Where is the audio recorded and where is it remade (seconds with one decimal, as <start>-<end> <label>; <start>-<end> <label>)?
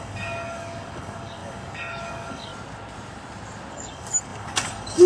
0.0-2.5 remade; 2.5-3.7 recorded; 3.7-5.1 remade